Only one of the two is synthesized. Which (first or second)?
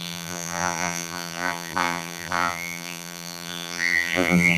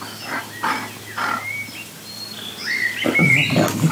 first